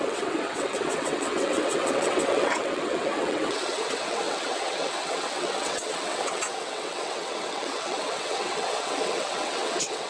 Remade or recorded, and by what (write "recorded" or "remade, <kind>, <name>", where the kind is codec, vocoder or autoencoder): remade, vocoder, WaveNeXt